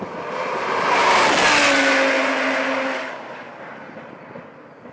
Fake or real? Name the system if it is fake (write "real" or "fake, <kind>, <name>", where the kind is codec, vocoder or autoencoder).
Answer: real